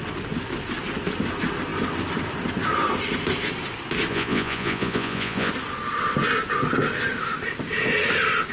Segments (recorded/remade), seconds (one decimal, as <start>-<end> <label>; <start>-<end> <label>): 0.0-4.1 recorded; 4.1-5.5 remade; 5.5-8.5 recorded